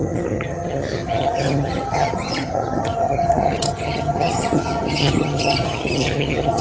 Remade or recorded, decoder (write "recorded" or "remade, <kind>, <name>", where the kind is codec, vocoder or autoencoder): remade, vocoder, HiFi-GAN